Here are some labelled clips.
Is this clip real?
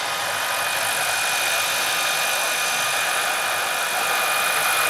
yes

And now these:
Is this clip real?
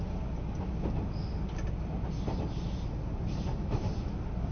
yes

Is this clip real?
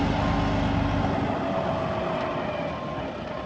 yes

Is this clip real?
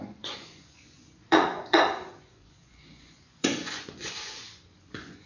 no